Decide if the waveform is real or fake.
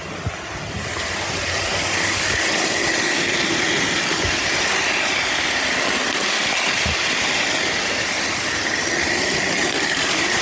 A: real